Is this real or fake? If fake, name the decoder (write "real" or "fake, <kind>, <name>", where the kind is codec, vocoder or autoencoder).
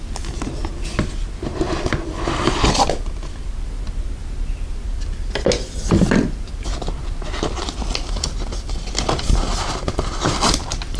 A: real